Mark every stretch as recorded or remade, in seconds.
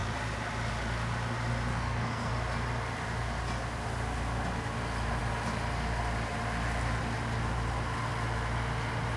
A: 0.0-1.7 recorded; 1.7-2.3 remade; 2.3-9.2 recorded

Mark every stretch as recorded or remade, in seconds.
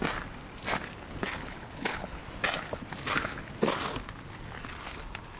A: 0.0-1.4 recorded; 1.4-2.2 remade; 2.2-5.4 recorded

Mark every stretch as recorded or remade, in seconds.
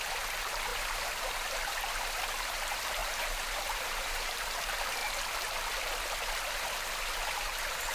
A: 0.0-3.0 recorded; 3.0-4.6 remade; 4.6-7.9 recorded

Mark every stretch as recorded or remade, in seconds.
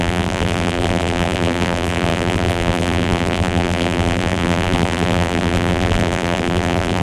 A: 0.0-7.0 remade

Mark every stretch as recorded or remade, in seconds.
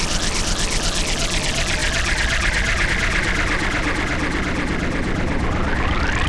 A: 0.0-6.3 recorded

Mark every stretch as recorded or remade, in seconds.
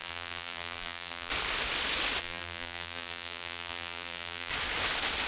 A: 0.0-1.3 remade; 1.3-2.2 recorded; 2.2-4.5 remade; 4.5-5.3 recorded